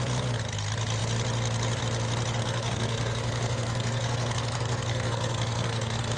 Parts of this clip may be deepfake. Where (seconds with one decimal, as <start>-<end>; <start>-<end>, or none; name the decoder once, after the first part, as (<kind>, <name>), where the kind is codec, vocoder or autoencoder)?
2.4-6.2 (codec, SNAC)